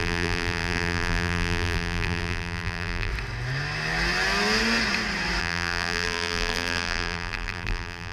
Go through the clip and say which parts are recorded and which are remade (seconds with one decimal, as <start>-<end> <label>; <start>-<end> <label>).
0.0-3.1 remade; 3.1-5.4 recorded; 5.4-8.1 remade